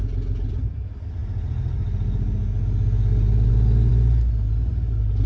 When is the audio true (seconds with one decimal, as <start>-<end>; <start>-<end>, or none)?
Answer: 0.0-5.3